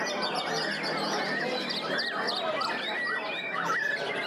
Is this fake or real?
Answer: real